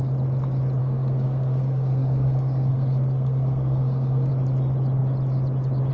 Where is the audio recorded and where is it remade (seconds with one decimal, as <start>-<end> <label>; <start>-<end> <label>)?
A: 0.0-0.8 recorded; 0.8-4.3 remade; 4.3-5.9 recorded